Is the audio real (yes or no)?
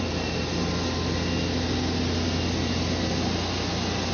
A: yes